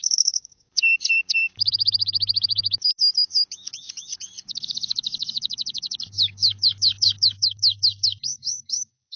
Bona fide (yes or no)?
no